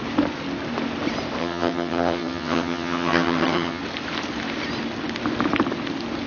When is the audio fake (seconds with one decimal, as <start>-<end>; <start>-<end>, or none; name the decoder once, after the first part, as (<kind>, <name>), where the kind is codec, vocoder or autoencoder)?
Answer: 1.4-3.8 (vocoder, HiFi-GAN)